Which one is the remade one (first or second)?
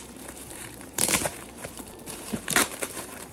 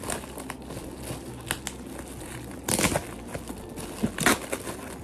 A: first